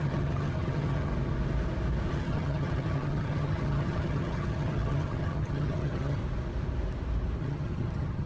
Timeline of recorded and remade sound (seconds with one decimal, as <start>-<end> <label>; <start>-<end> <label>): 0.0-1.1 remade; 1.1-2.1 recorded; 2.1-6.2 remade; 6.2-7.4 recorded; 7.4-8.3 remade